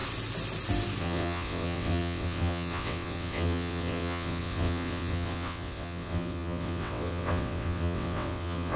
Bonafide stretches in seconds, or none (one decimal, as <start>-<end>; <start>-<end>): 0.0-1.0